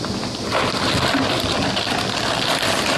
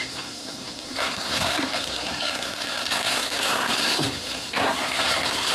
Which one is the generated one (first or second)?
second